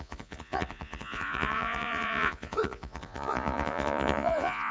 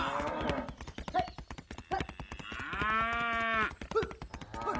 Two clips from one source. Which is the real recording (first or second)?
second